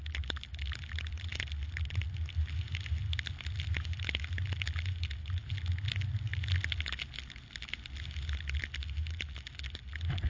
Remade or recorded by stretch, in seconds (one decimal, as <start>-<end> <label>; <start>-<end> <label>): 0.0-10.3 recorded